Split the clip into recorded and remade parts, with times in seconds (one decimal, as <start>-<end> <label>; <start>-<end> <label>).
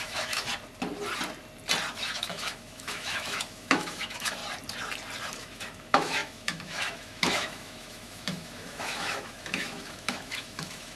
0.0-0.5 remade; 0.5-1.9 recorded; 1.9-4.4 remade; 4.4-5.3 recorded; 5.3-11.0 remade